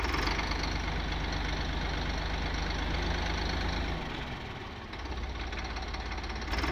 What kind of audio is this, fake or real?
real